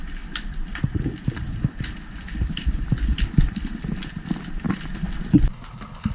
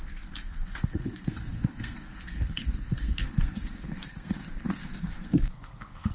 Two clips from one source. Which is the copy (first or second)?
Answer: second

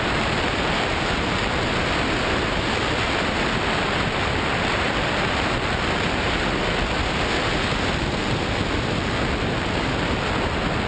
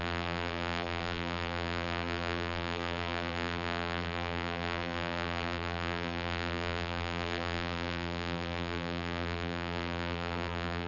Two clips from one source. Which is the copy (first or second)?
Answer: second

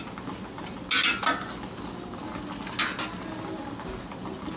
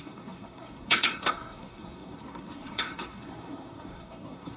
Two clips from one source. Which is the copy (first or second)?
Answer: second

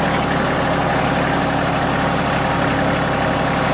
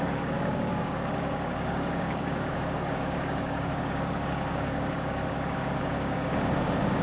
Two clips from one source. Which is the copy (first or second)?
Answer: second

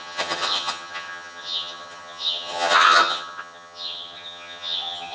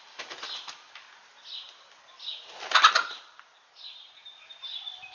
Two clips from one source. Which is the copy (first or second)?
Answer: first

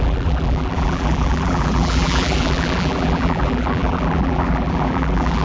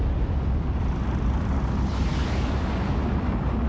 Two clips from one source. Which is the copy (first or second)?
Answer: first